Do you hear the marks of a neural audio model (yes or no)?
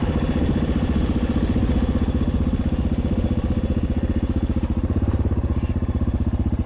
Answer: no